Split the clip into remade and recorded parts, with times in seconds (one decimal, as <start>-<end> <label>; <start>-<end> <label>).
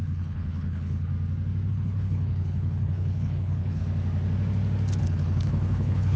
0.0-1.1 remade; 1.1-1.7 recorded; 1.7-3.8 remade; 3.8-5.0 recorded; 5.0-6.2 remade